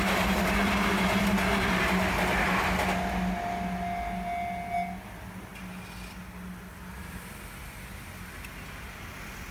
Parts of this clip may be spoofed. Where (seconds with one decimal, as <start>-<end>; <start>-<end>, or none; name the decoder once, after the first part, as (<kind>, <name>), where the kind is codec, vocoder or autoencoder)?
none